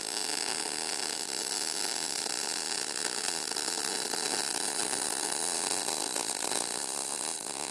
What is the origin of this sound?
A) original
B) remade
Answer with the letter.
A